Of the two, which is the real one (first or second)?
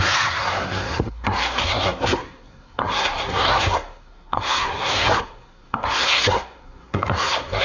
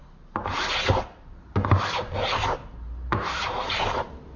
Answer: second